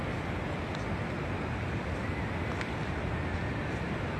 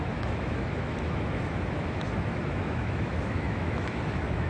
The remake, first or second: second